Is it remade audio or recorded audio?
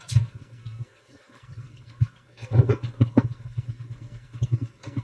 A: remade